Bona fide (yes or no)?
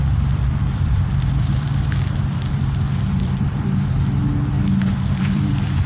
no